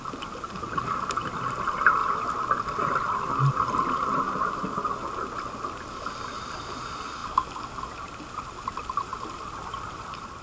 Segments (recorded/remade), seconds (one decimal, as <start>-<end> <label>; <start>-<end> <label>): 0.0-9.1 recorded; 9.1-10.4 remade